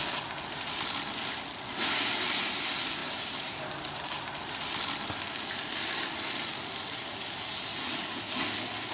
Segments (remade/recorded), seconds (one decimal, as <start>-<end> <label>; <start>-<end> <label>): 0.0-3.0 recorded; 3.0-4.5 remade; 4.5-8.9 recorded